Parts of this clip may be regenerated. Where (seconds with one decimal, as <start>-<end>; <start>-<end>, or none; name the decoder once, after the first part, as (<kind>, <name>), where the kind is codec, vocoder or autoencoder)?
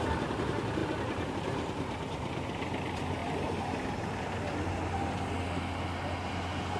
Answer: none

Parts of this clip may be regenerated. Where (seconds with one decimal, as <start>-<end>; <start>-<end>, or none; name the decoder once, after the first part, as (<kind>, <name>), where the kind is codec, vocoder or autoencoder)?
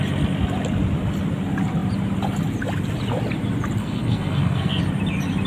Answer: 3.8-4.8 (codec, SNAC)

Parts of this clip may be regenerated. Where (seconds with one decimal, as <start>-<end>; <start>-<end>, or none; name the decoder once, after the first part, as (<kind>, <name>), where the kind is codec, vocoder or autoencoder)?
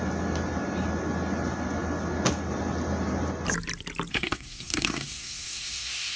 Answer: 4.1-6.2 (codec, SNAC)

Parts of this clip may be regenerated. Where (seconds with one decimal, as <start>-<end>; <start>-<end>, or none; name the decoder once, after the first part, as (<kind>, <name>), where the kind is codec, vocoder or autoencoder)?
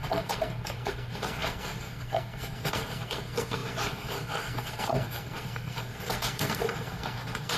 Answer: 0.0-7.6 (codec, SNAC)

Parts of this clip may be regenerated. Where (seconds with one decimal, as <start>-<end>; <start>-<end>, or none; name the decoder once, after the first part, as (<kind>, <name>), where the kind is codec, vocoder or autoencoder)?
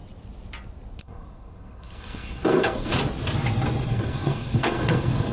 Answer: 1.0-2.9 (codec, SNAC); 3.9-5.3